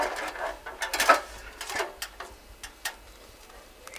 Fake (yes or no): no